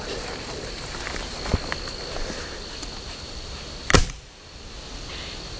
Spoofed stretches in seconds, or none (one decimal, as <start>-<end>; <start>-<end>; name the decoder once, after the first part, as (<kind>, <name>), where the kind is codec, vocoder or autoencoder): none